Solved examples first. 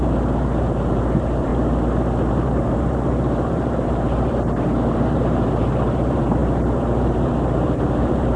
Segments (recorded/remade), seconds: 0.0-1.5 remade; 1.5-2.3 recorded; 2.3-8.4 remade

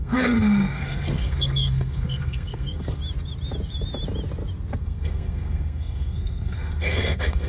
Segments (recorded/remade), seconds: 0.0-3.0 remade; 3.0-4.8 recorded; 4.8-7.5 remade

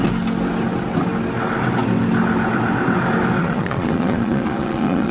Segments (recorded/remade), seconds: 0.0-3.4 recorded; 3.4-5.1 remade

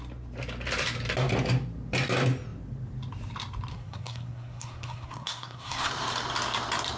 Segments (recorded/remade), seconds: 0.0-3.7 recorded; 3.7-5.9 remade; 5.9-7.0 recorded